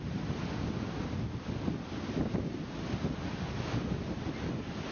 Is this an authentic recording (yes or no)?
yes